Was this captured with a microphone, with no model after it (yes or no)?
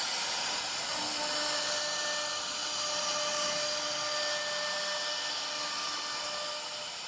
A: yes